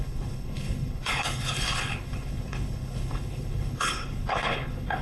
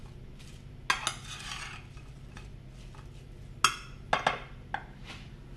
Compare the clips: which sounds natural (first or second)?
second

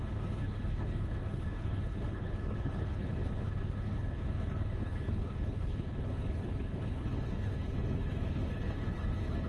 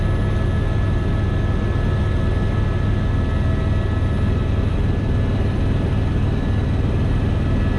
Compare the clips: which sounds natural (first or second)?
second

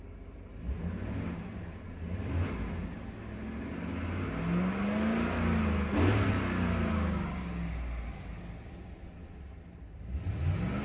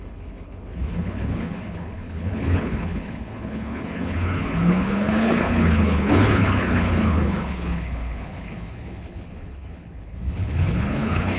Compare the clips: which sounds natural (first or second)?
first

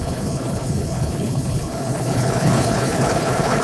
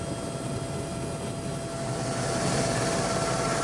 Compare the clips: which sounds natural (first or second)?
second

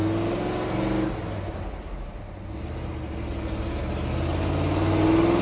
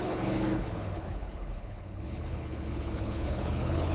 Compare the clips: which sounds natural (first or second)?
first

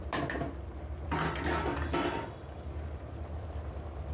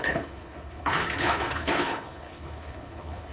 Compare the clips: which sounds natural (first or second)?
first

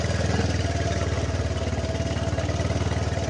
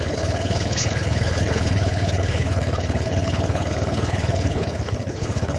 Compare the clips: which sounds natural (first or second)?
first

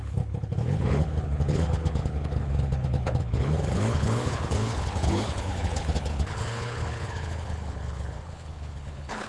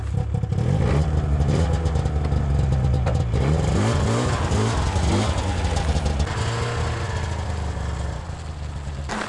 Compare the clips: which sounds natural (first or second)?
second